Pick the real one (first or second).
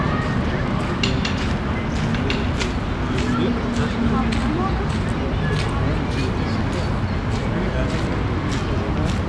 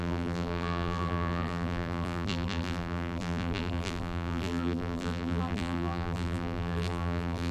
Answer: first